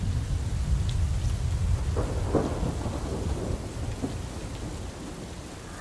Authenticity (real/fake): real